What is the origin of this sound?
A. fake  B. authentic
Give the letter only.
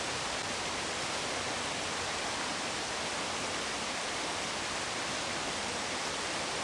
A